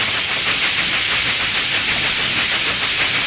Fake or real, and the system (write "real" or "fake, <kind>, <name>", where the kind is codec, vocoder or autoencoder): real